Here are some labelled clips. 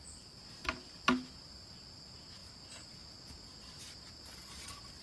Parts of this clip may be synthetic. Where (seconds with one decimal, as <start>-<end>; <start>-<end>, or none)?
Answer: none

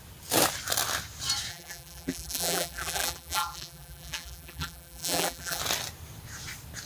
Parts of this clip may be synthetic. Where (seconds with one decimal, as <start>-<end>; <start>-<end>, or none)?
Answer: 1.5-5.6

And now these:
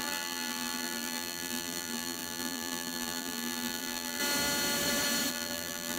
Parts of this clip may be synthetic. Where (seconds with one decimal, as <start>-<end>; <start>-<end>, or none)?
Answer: 0.0-4.2; 5.3-6.0

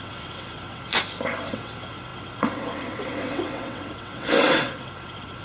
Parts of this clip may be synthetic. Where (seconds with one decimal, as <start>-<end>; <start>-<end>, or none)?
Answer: 0.0-0.9; 1.5-5.4

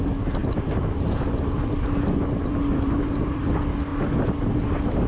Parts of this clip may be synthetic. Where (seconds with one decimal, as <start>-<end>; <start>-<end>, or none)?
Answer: 0.4-3.5